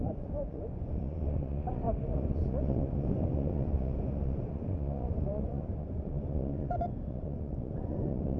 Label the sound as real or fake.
fake